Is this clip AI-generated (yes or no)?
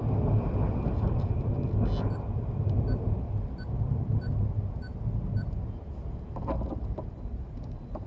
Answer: no